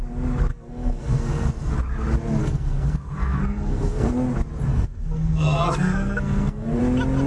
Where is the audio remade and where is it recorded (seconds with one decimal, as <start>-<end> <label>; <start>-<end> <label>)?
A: 0.0-0.5 recorded; 0.5-1.7 remade; 1.7-2.4 recorded; 2.4-4.1 remade; 4.1-4.7 recorded; 4.7-6.8 remade; 6.8-7.3 recorded